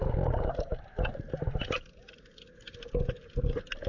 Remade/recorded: recorded